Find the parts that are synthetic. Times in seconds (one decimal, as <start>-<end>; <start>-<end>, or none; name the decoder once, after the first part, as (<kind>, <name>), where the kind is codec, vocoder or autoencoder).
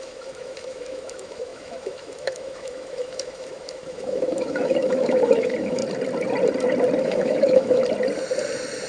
0.0-5.8 (autoencoder, DAC-VAE); 7.0-7.8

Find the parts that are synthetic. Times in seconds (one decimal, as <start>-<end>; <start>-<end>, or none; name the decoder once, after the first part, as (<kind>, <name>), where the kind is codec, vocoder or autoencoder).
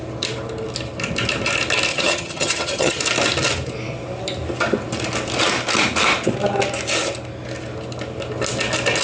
1.9-3.0 (vocoder, HiFi-GAN)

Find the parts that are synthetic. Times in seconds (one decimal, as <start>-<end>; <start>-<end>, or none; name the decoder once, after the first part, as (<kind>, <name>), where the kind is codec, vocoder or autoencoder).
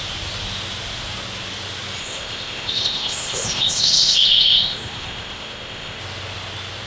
2.0-6.0 (codec, ZipCodec)